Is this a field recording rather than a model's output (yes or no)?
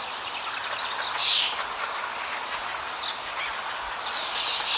yes